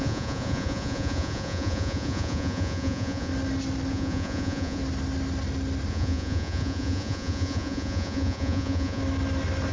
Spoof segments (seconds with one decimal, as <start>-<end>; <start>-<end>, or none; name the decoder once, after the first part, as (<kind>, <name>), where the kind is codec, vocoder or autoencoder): 0.0-3.3 (vocoder, Vocos); 3.9-4.8; 5.9-9.0